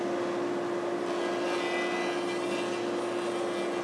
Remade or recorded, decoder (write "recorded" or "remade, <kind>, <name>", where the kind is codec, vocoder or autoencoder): recorded